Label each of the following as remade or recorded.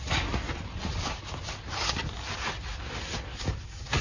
recorded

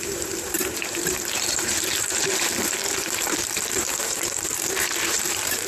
remade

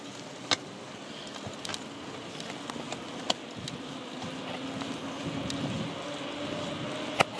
recorded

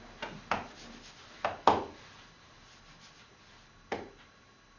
recorded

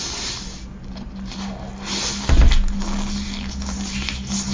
recorded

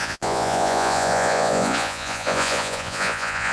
remade